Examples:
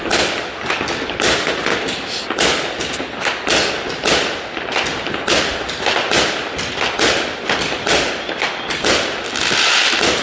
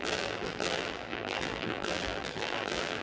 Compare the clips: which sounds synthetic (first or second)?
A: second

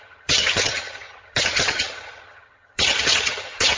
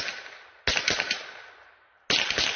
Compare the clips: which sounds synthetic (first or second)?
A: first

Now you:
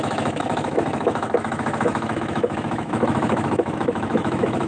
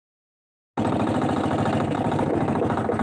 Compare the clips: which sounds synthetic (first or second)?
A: first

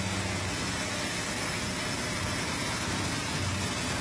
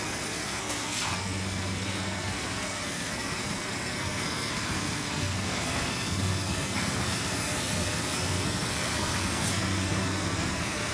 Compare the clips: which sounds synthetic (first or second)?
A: second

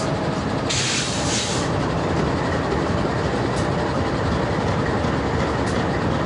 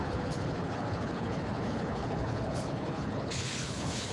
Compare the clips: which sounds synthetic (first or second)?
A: second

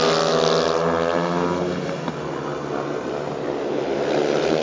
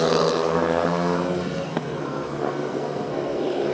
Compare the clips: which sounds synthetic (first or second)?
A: second